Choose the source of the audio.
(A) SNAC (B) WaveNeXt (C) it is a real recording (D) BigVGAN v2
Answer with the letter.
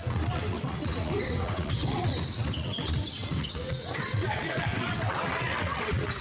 B